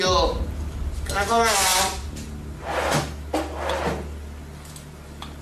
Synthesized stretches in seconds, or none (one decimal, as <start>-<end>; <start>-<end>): none